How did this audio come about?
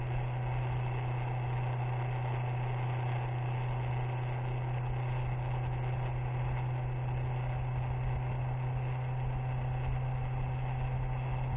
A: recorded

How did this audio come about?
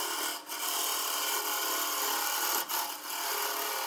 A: recorded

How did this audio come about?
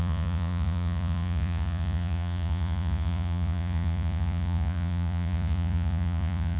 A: remade